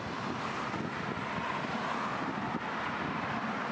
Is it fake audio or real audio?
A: real